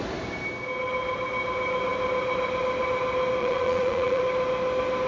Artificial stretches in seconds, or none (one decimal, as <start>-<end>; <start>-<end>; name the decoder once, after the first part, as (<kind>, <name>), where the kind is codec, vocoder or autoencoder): 3.4-4.2 (vocoder, Vocos)